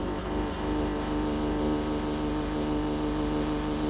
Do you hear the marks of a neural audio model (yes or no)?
yes